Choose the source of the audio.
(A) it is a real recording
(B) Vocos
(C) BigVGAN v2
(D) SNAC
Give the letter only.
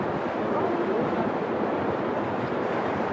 A